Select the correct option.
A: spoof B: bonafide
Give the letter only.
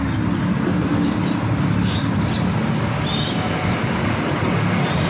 B